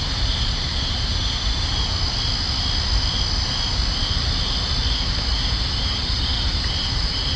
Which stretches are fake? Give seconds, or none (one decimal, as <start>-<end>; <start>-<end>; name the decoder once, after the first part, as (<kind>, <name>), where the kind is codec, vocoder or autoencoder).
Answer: 0.0-1.1 (vocoder, BigVGAN v2); 5.5-7.4